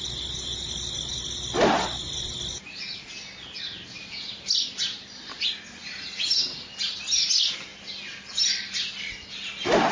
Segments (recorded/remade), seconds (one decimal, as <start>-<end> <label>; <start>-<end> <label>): 0.0-9.9 recorded